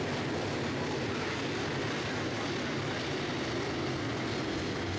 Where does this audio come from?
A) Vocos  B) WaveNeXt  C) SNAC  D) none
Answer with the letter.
D